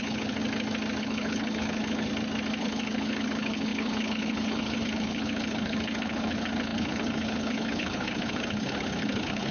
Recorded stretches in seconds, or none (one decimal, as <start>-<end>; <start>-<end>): 0.4-1.0; 2.1-2.6